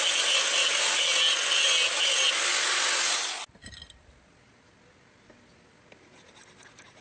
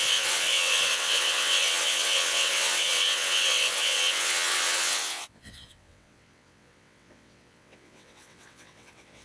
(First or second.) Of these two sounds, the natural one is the first